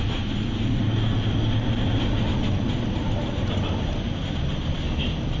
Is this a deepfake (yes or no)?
no